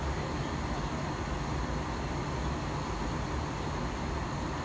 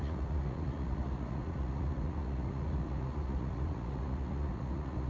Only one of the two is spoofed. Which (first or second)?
second